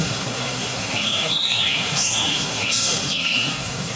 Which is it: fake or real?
fake